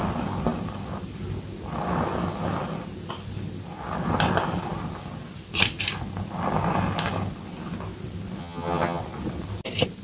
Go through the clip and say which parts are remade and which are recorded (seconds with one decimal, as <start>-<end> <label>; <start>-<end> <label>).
0.0-8.4 recorded; 8.4-9.0 remade; 9.0-10.0 recorded